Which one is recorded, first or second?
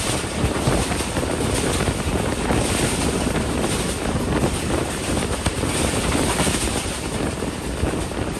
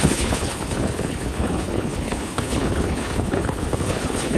first